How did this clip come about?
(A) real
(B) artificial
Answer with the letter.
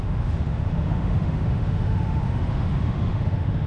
B